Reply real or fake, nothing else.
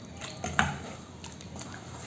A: real